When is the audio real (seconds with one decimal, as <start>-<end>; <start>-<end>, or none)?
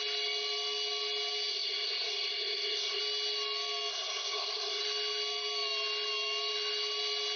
0.0-1.5; 3.0-3.9; 4.8-7.4